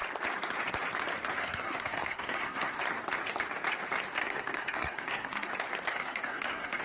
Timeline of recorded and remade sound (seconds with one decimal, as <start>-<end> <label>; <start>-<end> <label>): 0.0-1.4 recorded; 1.4-2.8 remade; 2.8-4.2 recorded; 4.2-5.5 remade; 5.5-5.9 recorded; 5.9-6.8 remade